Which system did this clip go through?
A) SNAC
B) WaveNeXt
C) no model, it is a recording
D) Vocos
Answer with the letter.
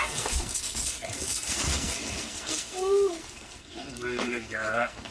A